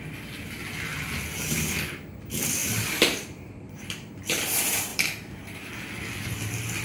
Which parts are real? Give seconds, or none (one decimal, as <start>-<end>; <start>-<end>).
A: 0.0-2.6; 4.2-4.9; 5.7-6.8